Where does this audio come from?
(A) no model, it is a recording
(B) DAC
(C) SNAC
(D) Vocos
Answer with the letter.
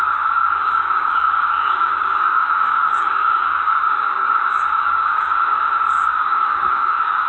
B